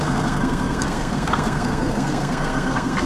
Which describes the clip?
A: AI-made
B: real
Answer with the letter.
A